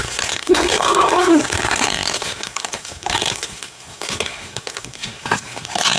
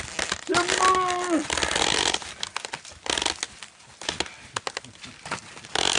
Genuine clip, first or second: second